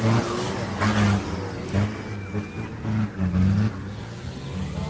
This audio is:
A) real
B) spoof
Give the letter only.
A